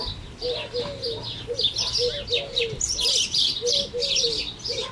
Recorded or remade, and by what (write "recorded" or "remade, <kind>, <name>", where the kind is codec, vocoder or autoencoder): recorded